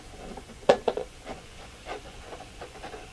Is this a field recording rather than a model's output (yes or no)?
no